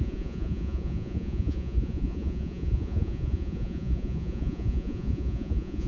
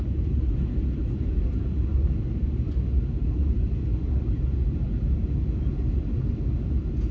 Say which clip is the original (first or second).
second